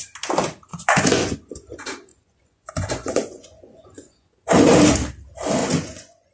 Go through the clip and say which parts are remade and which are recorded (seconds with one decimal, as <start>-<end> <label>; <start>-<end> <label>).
0.0-0.7 recorded; 0.7-1.5 remade; 1.5-2.1 recorded; 2.1-4.5 remade; 4.5-5.6 recorded; 5.6-6.3 remade